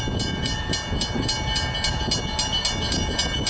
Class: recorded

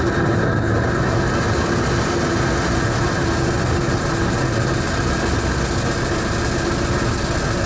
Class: recorded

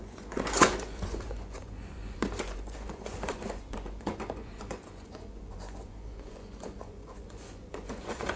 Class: remade